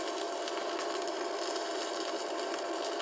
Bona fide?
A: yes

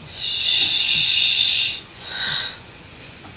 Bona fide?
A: no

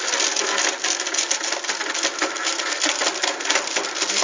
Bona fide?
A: yes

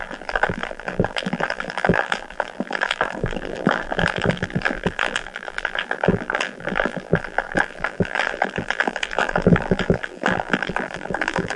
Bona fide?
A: no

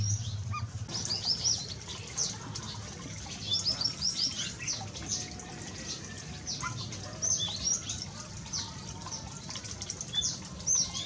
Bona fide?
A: yes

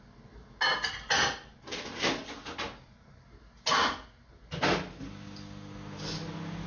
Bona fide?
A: yes